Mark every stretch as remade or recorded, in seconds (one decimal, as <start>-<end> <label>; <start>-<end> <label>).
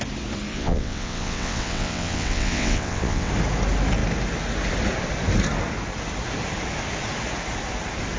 0.0-0.5 recorded; 0.5-3.3 remade; 3.3-8.2 recorded